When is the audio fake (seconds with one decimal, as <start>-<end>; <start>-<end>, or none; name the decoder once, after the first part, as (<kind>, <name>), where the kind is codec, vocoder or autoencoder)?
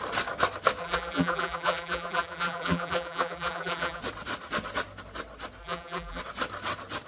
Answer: 0.8-4.0 (vocoder, BigVGAN v2); 5.6-6.2